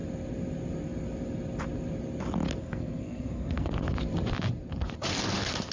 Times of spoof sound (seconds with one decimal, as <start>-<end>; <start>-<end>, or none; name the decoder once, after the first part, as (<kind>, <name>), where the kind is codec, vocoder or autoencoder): 2.6-3.7 (codec, SNAC)